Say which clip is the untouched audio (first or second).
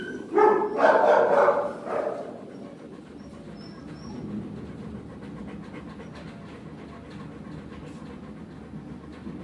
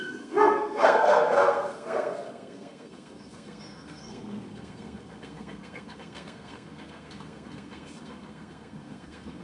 first